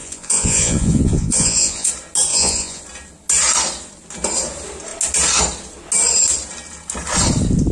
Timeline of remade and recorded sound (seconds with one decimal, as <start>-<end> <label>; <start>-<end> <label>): 0.0-1.9 remade; 1.9-2.3 recorded; 2.3-2.8 remade; 2.8-7.7 recorded